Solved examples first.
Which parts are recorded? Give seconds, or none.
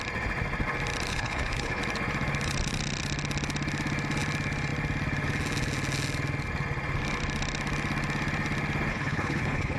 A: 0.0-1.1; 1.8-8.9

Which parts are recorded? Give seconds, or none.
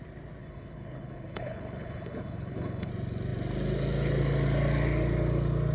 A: 0.0-0.4; 2.9-5.7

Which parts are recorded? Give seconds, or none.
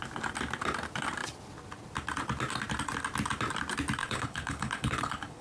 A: 0.0-4.0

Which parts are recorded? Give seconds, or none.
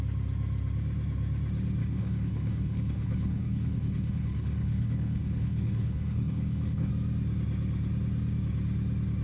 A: 0.0-1.8; 6.9-9.2